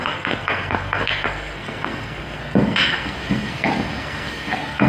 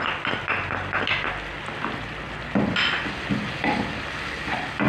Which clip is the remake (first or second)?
first